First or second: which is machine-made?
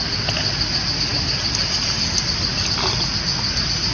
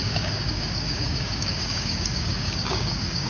second